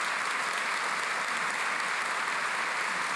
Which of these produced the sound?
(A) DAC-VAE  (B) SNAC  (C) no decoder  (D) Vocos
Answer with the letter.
C